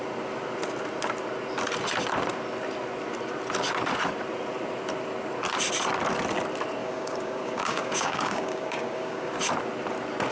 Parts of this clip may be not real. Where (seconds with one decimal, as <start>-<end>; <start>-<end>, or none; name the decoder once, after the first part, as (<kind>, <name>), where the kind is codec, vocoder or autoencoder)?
6.8-9.3 (codec, DAC)